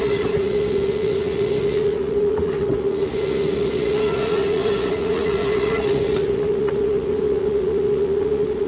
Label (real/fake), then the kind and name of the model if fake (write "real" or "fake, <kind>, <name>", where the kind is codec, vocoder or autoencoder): fake, vocoder, Vocos